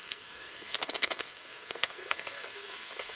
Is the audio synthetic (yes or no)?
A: yes